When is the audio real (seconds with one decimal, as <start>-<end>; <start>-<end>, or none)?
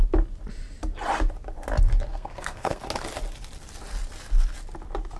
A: 0.0-2.1; 2.8-5.2